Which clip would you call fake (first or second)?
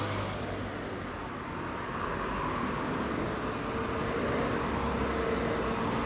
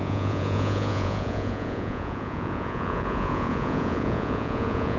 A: second